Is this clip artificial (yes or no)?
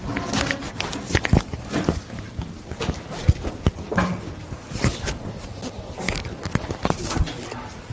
no